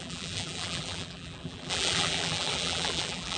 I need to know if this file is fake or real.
fake